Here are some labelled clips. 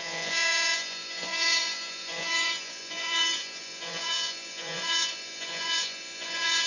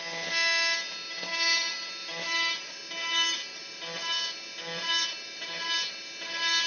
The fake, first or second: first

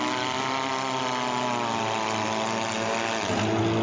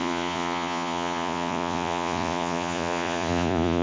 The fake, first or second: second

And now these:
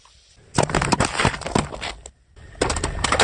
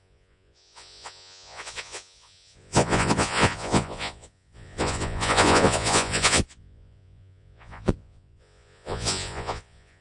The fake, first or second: second